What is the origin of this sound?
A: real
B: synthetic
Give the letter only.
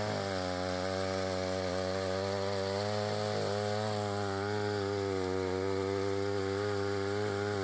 A